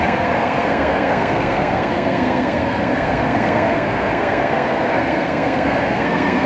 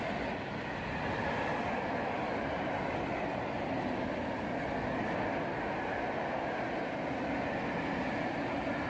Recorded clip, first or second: second